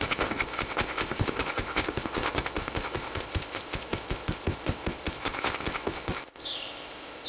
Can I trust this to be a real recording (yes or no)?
no